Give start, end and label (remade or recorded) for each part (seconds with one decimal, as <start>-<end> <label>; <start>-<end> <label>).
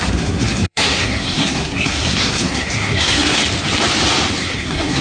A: 0.0-3.4 remade; 3.4-4.4 recorded; 4.4-5.0 remade